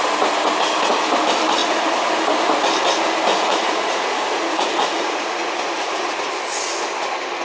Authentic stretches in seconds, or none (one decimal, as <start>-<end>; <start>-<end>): 0.0-1.6; 2.1-3.3; 6.3-7.4